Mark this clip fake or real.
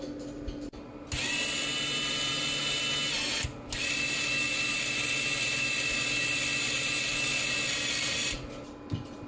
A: real